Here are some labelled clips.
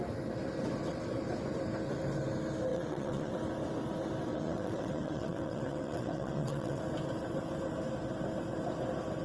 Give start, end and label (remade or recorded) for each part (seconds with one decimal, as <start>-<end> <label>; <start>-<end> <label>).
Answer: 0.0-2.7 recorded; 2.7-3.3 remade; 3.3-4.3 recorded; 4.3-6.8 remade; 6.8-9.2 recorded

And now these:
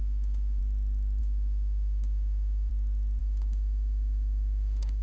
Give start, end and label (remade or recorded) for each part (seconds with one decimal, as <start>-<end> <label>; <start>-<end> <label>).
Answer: 0.0-0.6 remade; 0.6-1.2 recorded; 1.2-2.7 remade; 2.7-3.2 recorded; 3.2-5.0 remade

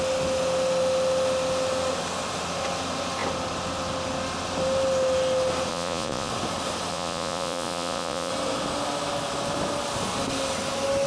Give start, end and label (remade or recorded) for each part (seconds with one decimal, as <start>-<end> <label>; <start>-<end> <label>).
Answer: 0.0-5.7 recorded; 5.7-6.3 remade; 6.3-6.9 recorded; 6.9-8.3 remade; 8.3-11.1 recorded

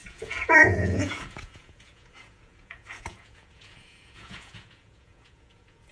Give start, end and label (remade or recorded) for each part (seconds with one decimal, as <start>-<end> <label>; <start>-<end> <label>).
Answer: 0.0-5.9 remade

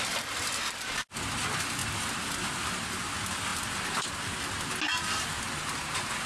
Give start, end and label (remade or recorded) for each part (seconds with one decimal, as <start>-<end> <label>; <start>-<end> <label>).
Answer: 0.0-6.3 recorded

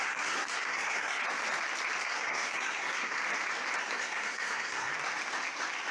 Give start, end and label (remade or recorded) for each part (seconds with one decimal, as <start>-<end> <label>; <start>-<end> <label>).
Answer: 0.0-1.2 remade; 1.2-2.0 recorded; 2.0-3.2 remade; 3.2-3.9 recorded; 3.9-4.9 remade; 4.9-5.9 recorded

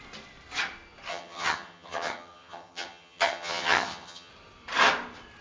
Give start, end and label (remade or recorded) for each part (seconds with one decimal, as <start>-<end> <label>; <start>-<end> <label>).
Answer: 0.0-1.1 recorded; 1.1-4.3 remade; 4.3-5.4 recorded

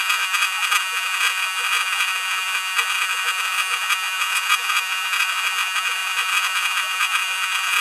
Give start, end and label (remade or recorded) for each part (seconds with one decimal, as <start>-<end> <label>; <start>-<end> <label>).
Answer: 0.0-7.8 remade